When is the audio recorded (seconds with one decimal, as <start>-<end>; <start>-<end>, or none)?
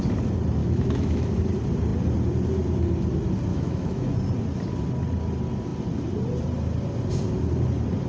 0.0-0.6; 1.3-3.5; 4.1-8.1